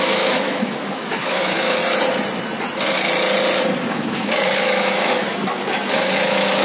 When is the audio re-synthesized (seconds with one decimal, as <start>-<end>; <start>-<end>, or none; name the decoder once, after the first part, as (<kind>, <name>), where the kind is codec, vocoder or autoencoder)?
0.0-1.8 (autoencoder, DAC-VAE); 3.9-6.6